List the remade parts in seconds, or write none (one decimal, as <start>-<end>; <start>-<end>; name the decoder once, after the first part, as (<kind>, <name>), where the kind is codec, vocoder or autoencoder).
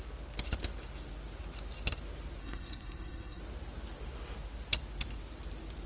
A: 2.4-3.4 (codec, SNAC)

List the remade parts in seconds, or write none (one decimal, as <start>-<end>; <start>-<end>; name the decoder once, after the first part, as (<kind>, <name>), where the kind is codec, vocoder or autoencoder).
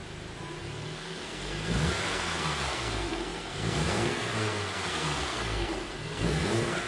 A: 0.6-6.9 (codec, SNAC)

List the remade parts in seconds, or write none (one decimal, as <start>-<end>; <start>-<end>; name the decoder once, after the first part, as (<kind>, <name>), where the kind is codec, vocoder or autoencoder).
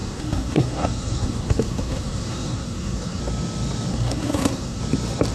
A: 0.0-3.2 (codec, SNAC); 3.9-4.8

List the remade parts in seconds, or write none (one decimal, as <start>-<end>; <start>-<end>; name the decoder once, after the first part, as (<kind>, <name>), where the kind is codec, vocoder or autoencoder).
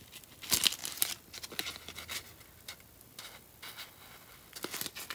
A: none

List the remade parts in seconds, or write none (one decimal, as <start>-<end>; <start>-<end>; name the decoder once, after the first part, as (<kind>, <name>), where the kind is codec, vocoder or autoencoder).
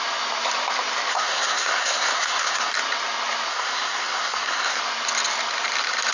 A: 1.1-2.7 (codec, SNAC); 3.5-4.8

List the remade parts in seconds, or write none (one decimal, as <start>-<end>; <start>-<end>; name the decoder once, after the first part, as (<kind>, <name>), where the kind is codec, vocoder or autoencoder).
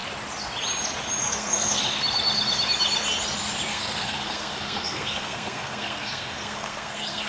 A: 1.2-1.8 (codec, SNAC); 3.7-7.3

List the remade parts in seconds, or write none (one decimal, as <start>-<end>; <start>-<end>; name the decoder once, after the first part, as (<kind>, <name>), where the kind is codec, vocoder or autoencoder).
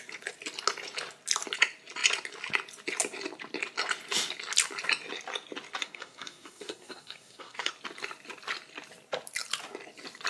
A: 5.8-7.7 (codec, SNAC)